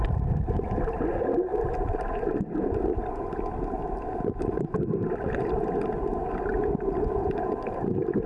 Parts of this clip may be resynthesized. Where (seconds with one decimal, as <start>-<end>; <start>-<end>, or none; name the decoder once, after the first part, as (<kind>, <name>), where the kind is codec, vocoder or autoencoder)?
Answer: none